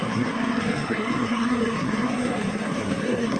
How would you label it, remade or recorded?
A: remade